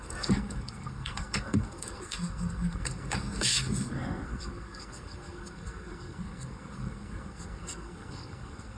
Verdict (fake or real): fake